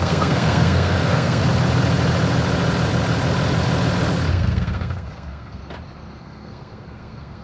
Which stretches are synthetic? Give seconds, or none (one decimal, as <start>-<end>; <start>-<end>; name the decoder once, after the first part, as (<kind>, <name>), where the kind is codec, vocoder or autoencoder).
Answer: 0.0-1.4 (codec, SNAC); 4.3-5.6; 6.2-7.4